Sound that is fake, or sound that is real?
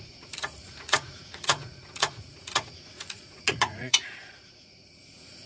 fake